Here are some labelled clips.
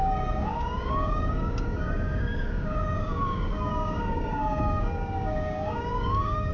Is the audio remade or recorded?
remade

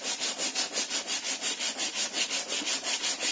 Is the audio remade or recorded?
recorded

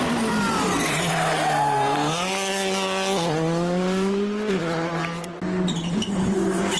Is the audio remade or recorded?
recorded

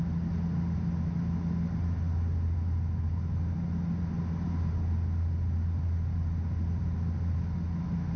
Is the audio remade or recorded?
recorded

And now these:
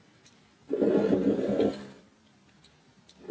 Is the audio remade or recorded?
recorded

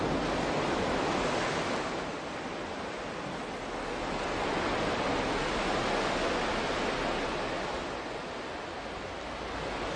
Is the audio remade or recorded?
recorded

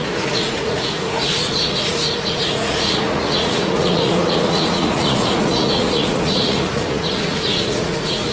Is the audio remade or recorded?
remade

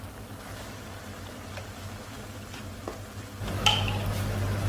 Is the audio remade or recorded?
recorded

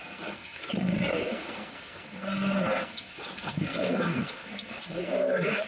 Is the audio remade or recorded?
remade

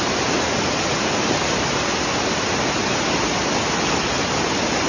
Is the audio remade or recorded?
recorded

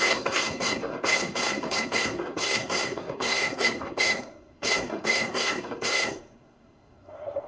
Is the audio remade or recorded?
remade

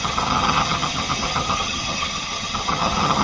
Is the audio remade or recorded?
remade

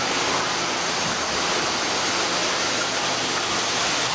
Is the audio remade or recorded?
recorded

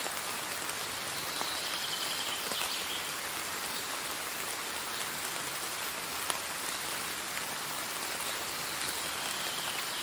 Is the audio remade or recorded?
recorded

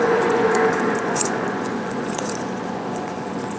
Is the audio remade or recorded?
remade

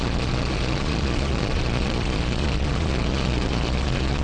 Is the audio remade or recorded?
remade